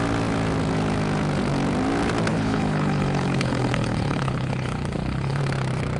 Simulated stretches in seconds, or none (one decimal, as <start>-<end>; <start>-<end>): 2.3-5.4